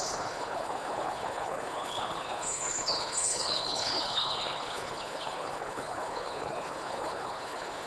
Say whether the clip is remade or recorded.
remade